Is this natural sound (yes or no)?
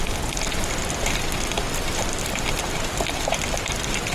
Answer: yes